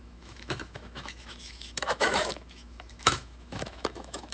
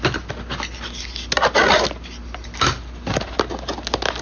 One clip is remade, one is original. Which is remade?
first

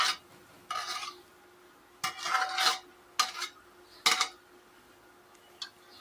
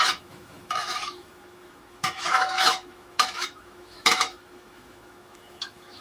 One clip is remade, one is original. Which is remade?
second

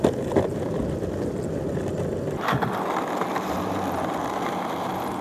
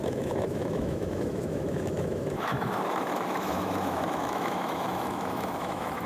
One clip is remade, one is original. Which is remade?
second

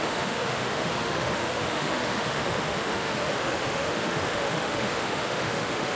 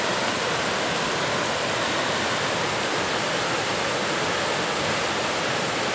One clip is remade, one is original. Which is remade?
first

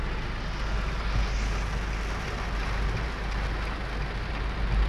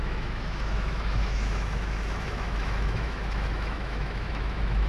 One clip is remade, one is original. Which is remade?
second